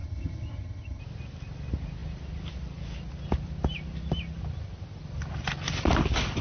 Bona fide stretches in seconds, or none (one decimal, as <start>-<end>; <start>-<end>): 1.0-6.4